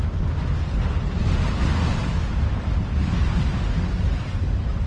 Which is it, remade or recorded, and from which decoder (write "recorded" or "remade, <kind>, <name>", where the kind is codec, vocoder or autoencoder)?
recorded